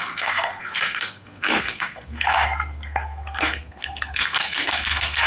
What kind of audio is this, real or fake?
fake